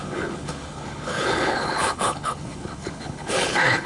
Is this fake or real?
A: fake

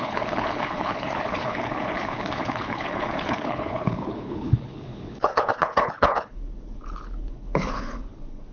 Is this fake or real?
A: fake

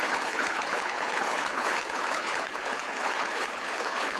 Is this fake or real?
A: fake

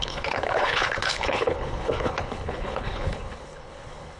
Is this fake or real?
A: fake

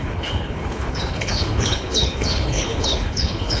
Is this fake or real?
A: fake